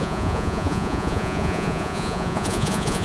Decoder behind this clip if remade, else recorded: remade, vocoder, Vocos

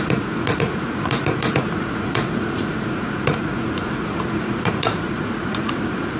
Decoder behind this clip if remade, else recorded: remade, vocoder, Vocos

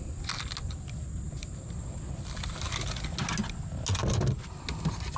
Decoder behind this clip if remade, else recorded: recorded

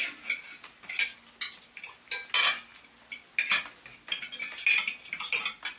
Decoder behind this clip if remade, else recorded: recorded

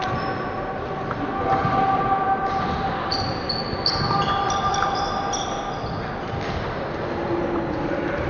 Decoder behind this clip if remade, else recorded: recorded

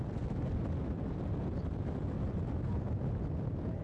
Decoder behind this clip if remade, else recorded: recorded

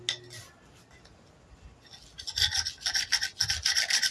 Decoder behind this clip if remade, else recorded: recorded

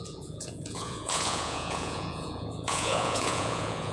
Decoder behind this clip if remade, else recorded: remade, vocoder, Vocos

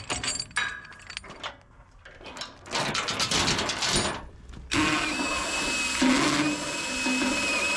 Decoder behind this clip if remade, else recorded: recorded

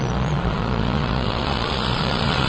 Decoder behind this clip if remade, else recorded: remade, vocoder, Vocos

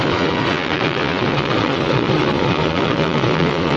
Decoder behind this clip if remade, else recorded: remade, vocoder, Vocos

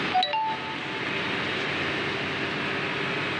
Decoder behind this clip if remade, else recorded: recorded